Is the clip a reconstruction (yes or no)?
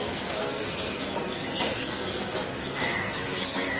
yes